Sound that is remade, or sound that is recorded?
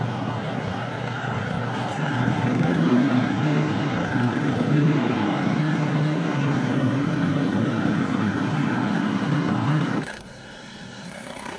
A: remade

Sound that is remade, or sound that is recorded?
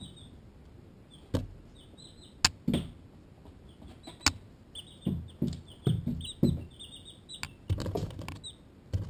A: recorded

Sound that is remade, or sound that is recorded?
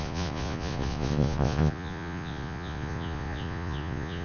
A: remade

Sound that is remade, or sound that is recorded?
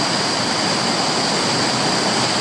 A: remade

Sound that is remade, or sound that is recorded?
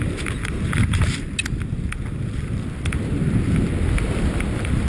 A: recorded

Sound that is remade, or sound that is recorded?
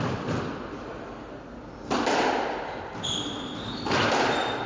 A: recorded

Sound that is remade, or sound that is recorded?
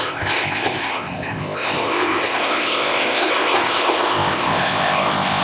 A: remade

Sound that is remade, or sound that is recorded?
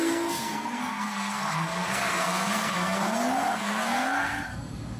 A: remade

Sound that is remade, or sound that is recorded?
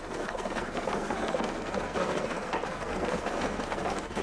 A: remade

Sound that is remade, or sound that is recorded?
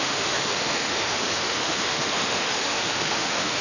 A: remade